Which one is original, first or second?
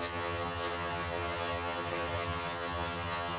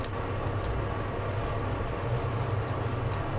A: second